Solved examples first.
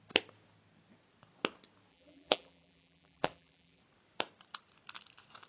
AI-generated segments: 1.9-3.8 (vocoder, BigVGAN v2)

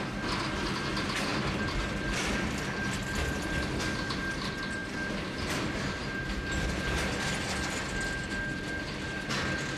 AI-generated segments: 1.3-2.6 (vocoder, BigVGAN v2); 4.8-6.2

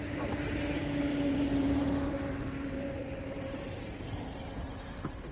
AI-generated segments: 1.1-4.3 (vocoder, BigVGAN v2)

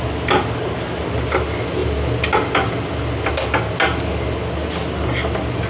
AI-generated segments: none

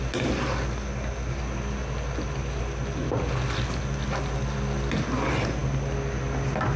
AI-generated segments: none